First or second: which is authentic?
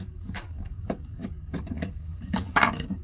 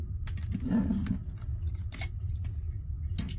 second